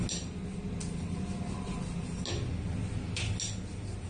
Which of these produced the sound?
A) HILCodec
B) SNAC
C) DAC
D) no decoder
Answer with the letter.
D